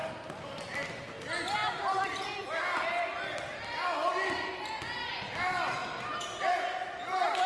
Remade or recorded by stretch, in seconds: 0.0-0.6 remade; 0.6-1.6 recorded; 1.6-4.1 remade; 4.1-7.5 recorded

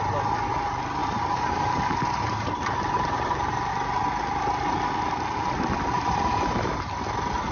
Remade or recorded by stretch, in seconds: 0.0-1.0 recorded; 1.0-3.7 remade; 3.7-6.0 recorded; 6.0-6.9 remade; 6.9-7.5 recorded

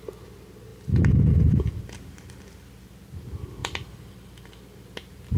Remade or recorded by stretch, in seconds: 0.0-0.7 recorded; 0.7-1.8 remade; 1.8-3.6 recorded; 3.6-4.6 remade; 4.6-5.4 recorded

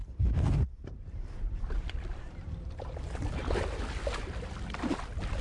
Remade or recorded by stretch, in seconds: 0.0-3.2 remade; 3.2-5.4 recorded

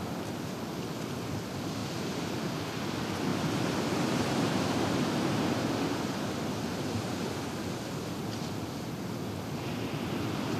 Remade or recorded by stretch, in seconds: 0.0-3.3 recorded; 3.3-5.8 remade; 5.8-10.6 recorded

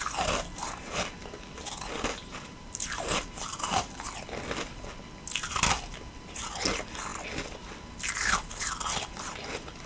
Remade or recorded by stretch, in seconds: 0.0-2.2 recorded; 2.2-3.9 remade; 3.9-9.9 recorded

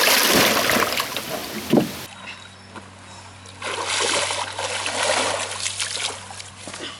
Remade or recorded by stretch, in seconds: 0.0-7.0 recorded

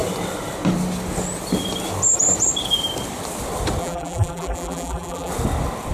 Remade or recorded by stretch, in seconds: 0.0-3.8 recorded; 3.8-5.3 remade; 5.3-5.9 recorded